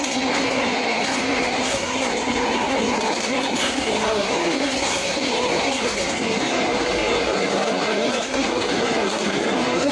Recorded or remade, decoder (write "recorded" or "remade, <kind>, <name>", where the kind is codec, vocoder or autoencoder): remade, codec, SNAC